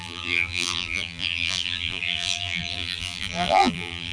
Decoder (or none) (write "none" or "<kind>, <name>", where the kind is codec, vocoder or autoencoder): vocoder, BigVGAN v2